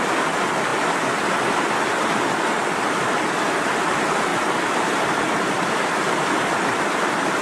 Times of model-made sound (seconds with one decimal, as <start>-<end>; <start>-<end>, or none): 4.3-7.4